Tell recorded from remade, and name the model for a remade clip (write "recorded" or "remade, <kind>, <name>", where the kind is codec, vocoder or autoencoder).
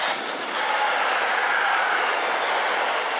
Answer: recorded